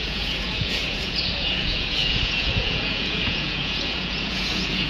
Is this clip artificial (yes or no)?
yes